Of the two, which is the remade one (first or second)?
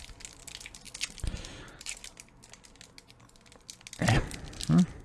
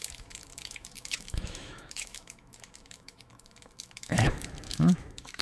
second